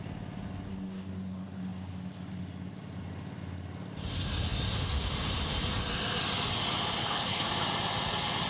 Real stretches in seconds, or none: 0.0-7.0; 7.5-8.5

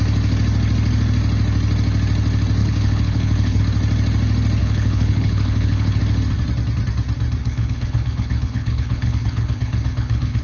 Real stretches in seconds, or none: 0.0-2.6; 3.6-4.6; 6.0-7.4

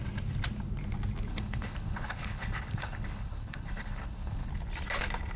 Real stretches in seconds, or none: 0.0-1.3; 4.5-5.4

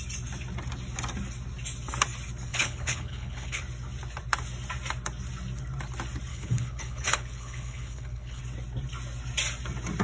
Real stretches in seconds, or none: 0.0-2.5; 3.6-6.3; 8.4-10.0